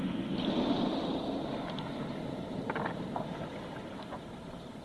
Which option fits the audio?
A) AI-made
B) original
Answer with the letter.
B